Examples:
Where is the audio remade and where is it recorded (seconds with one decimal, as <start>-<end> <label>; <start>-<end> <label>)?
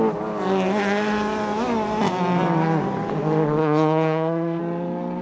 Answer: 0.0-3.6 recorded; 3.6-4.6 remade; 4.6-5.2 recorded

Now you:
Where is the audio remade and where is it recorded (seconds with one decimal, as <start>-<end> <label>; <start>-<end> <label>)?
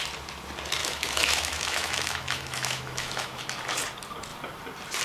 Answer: 0.0-0.8 recorded; 0.8-3.4 remade; 3.4-5.0 recorded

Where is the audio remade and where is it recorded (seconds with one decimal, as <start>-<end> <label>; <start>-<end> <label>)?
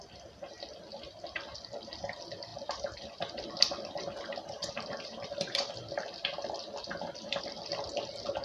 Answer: 0.0-2.5 recorded; 2.5-7.4 remade; 7.4-8.4 recorded